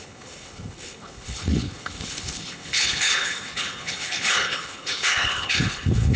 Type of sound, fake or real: fake